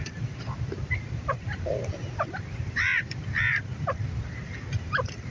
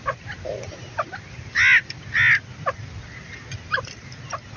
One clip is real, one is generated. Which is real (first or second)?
second